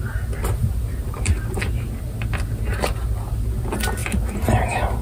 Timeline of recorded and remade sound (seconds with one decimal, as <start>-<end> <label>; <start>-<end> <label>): 0.0-0.6 recorded; 0.6-1.3 remade; 1.3-4.0 recorded; 4.0-4.6 remade; 4.6-5.0 recorded